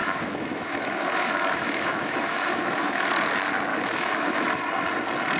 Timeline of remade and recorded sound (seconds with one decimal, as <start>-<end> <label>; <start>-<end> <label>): 0.0-3.1 remade; 3.1-3.7 recorded; 3.7-4.6 remade; 4.6-5.4 recorded